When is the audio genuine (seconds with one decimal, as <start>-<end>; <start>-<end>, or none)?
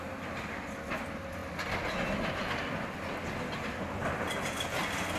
0.0-5.2